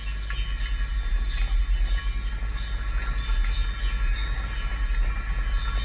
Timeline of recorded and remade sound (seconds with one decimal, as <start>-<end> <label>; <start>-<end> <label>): 0.0-5.8 recorded